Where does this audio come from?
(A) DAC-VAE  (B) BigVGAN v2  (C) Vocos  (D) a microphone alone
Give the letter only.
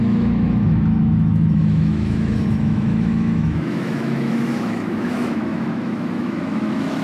A